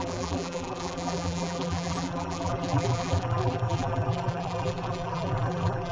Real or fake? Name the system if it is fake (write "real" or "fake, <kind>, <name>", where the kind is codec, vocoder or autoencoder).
fake, vocoder, BigVGAN v2